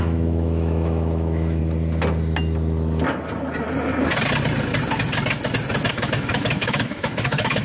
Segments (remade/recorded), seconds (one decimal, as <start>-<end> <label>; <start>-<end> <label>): 0.0-1.6 remade; 1.6-5.9 recorded; 5.9-7.6 remade